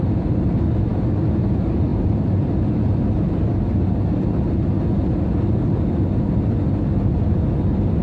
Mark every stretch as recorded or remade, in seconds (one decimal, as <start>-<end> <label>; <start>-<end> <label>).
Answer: 0.0-8.0 recorded

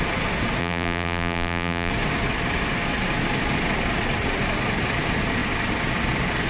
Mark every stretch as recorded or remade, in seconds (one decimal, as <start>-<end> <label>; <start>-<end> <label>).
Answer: 0.0-0.6 recorded; 0.6-1.9 remade; 1.9-6.5 recorded

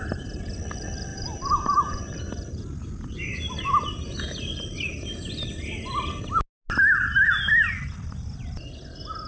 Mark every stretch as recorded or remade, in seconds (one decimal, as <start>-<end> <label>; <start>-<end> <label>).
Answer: 0.0-1.1 recorded; 1.1-2.2 remade; 2.2-9.3 recorded

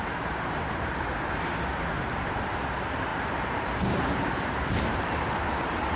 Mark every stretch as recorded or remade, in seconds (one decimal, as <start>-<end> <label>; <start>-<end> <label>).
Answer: 0.0-1.7 remade; 1.7-2.3 recorded; 2.3-6.0 remade

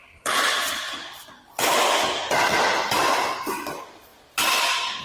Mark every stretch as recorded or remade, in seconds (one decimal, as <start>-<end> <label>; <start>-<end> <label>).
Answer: 0.0-1.2 remade; 1.2-4.1 recorded; 4.1-5.0 remade

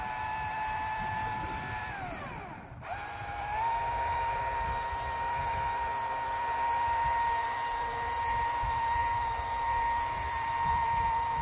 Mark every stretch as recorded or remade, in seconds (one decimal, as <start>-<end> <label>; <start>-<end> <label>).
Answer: 0.0-11.4 remade

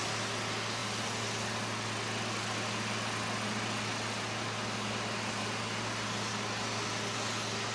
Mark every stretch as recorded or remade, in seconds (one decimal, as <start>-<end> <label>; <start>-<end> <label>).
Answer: 0.0-7.7 recorded